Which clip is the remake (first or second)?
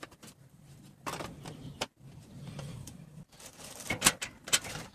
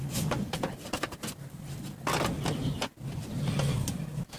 first